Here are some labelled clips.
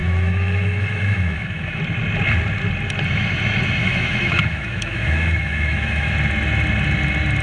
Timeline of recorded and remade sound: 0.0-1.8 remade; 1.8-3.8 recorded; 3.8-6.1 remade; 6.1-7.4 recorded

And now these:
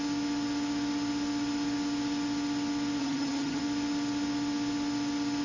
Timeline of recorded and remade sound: 0.0-3.0 recorded; 3.0-3.6 remade; 3.6-5.4 recorded

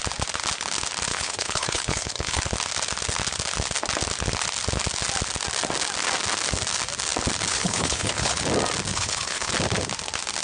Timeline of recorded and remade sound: 0.0-1.1 recorded; 1.1-2.4 remade; 2.4-7.5 recorded; 7.5-8.4 remade; 8.4-8.9 recorded; 8.9-9.5 remade; 9.5-10.4 recorded

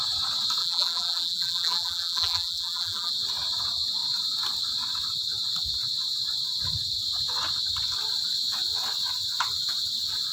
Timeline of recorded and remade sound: 0.0-0.6 recorded; 0.6-3.1 remade; 3.1-10.3 recorded

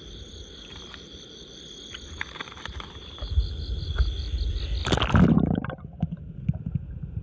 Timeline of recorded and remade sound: 0.0-4.8 remade; 4.8-6.3 recorded; 6.3-7.2 remade

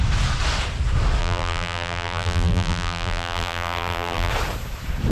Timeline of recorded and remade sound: 0.0-1.2 recorded; 1.2-4.3 remade; 4.3-5.1 recorded

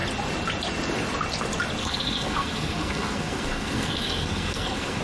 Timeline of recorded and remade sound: 0.0-1.8 recorded; 1.8-5.0 remade